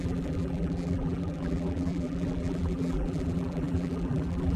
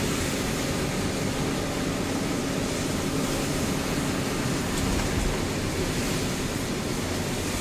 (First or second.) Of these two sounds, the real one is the second